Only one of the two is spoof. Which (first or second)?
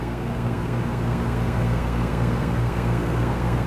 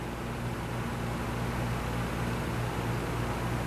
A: first